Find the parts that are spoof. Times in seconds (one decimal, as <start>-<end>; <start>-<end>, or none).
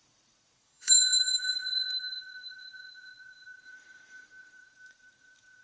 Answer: 0.0-5.6